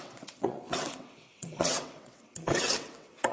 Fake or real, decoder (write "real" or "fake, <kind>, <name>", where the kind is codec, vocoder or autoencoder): fake, vocoder, WaveNeXt